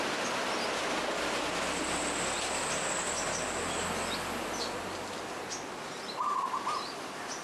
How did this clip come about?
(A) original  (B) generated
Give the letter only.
A